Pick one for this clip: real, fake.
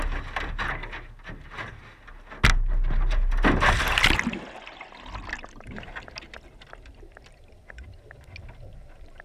real